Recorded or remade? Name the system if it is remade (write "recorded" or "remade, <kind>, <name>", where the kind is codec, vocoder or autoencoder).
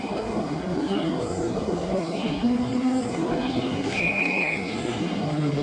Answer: remade, codec, SNAC